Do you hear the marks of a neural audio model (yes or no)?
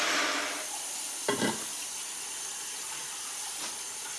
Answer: yes